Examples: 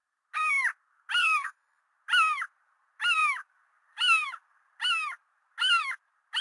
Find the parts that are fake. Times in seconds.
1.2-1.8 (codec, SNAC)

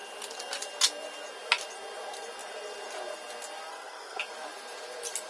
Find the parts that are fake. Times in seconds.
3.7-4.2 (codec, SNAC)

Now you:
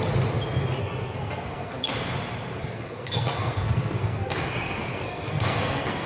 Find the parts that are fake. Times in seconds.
0.8-1.9 (codec, SNAC); 2.6-6.1

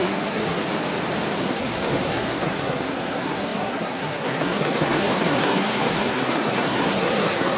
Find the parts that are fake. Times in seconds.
0.0-0.6 (codec, SNAC); 1.4-7.6